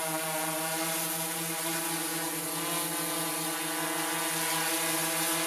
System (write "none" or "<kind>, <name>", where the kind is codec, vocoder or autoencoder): none